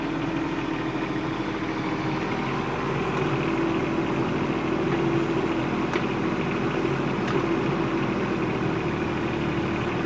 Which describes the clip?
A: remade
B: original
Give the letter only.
B